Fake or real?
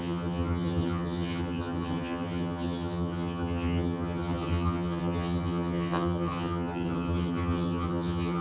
fake